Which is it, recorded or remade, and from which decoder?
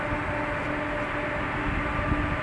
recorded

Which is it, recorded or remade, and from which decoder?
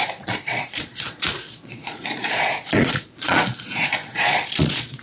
remade, vocoder, Vocos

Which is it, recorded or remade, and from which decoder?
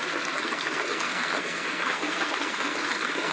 remade, codec, SNAC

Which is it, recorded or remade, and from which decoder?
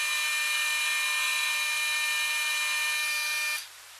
recorded